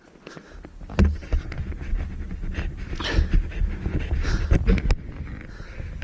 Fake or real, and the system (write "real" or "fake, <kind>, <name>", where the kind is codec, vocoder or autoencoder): real